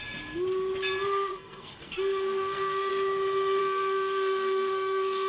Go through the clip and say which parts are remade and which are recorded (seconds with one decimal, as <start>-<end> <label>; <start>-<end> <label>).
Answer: 0.0-1.3 recorded; 1.3-2.9 remade; 2.9-3.6 recorded; 3.6-5.3 remade